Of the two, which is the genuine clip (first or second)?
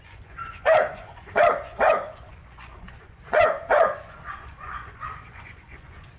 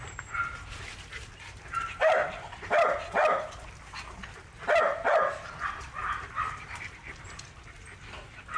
second